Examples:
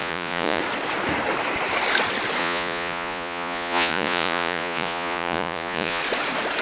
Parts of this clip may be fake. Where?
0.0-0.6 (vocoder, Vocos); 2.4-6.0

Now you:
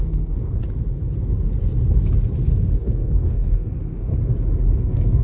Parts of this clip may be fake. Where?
0.0-0.6 (codec, SNAC); 2.8-4.1; 4.8-5.2

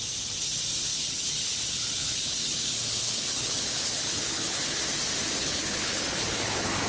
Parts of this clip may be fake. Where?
0.9-4.8 (codec, HILCodec); 5.4-6.9

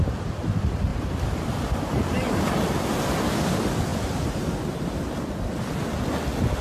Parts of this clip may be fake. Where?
0.9-2.8 (vocoder, BigVGAN v2); 3.9-4.6

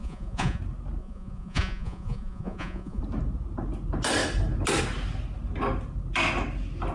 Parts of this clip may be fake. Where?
0.0-0.6 (vocoder, Vocos); 1.0-3.0